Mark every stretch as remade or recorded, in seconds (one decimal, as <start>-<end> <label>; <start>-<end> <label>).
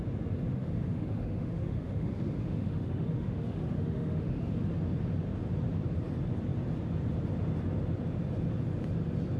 0.0-0.6 recorded; 0.6-4.5 remade; 4.5-9.4 recorded